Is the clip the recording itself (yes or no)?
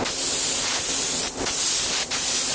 yes